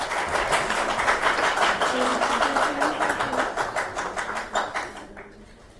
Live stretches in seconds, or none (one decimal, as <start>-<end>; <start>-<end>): 0.0-5.8